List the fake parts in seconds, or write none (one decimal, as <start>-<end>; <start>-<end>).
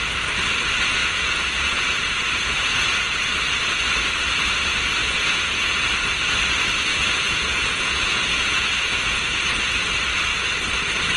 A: 1.0-3.2; 5.0-5.9; 6.9-9.8